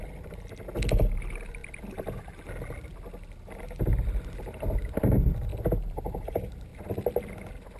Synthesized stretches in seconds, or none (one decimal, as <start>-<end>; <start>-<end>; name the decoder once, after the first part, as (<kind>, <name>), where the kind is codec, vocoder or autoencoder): 5.5-6.7 (vocoder, BigVGAN v2)